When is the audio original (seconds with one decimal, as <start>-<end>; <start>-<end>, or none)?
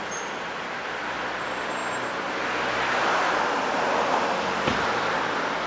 0.0-5.7